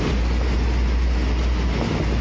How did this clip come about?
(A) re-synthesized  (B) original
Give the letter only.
B